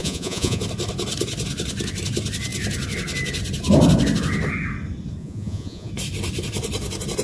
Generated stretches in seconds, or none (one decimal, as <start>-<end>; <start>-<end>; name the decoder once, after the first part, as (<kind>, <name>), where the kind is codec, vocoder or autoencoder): 0.0-0.6 (vocoder, Vocos); 5.2-5.9